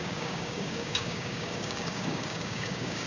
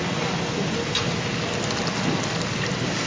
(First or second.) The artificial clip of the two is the first